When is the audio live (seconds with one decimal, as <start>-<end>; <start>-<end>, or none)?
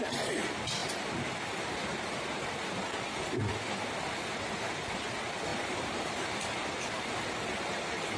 0.0-5.5; 6.4-8.2